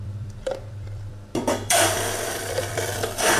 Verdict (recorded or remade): remade